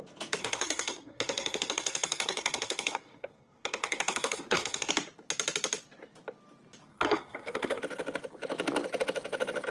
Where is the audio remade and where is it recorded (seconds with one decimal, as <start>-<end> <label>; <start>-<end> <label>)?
0.0-0.4 recorded; 0.4-4.9 remade; 4.9-6.9 recorded; 6.9-7.8 remade; 7.8-9.7 recorded